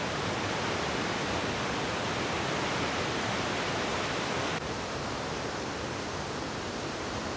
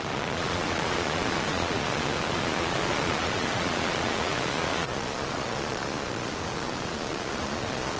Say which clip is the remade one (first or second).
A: second